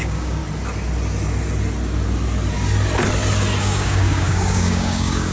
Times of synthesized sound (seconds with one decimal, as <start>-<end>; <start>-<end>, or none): 0.0-0.4; 3.6-5.3